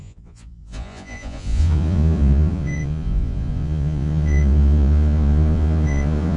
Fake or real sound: fake